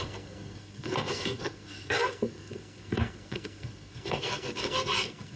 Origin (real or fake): fake